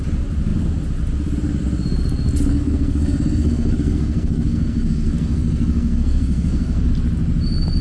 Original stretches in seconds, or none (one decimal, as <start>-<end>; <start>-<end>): 0.0-2.5; 6.9-7.8